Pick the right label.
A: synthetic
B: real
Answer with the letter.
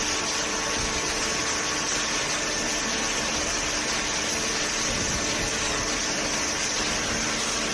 B